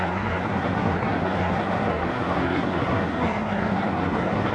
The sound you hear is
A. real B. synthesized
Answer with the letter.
B